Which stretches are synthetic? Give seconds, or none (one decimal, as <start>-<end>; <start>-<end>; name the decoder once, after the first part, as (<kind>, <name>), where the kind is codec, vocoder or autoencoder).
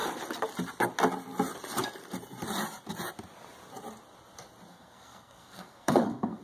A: 4.7-6.4 (codec, SNAC)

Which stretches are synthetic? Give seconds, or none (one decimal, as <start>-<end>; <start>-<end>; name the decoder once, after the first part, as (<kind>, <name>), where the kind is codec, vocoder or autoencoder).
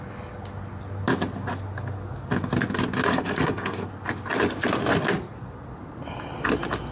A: 3.1-3.9 (codec, SNAC)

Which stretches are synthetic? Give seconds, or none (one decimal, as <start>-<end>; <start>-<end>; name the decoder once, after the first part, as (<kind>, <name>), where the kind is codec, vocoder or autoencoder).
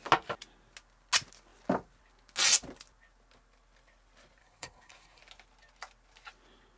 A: 4.4-5.2 (codec, SNAC)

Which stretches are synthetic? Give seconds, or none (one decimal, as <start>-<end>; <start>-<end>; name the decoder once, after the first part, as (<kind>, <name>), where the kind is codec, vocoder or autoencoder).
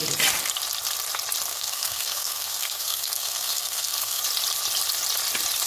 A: 1.5-4.2 (codec, SNAC)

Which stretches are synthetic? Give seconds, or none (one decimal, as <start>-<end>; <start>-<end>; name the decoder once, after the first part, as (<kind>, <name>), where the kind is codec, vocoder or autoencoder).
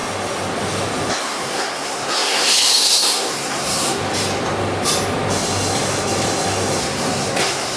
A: 1.2-4.0 (codec, SNAC); 6.8-7.8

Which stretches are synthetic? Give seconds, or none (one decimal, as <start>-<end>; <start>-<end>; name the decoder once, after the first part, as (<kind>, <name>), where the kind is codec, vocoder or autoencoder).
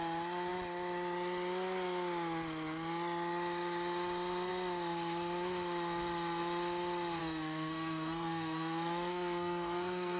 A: 7.2-10.2 (codec, SNAC)